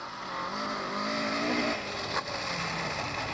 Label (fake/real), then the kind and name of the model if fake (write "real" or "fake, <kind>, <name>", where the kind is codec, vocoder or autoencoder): real